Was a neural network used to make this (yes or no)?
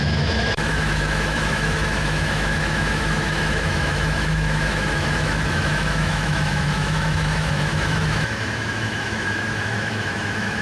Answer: yes